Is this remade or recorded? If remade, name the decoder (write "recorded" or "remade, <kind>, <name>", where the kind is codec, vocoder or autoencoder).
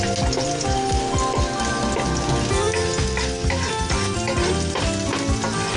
recorded